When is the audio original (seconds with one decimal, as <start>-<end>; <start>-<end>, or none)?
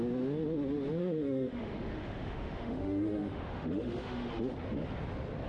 0.0-1.0; 4.3-5.5